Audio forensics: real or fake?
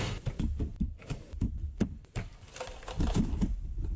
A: fake